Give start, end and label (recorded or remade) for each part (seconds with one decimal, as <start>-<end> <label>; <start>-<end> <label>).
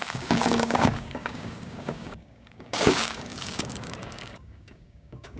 0.0-5.4 remade